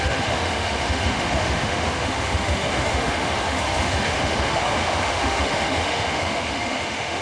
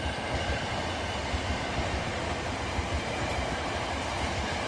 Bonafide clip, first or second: second